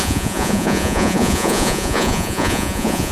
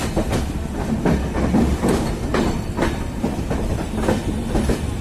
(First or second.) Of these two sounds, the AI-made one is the first